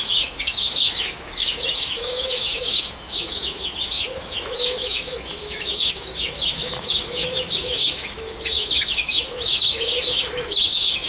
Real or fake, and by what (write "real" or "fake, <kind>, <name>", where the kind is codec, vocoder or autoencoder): fake, autoencoder, DAC-VAE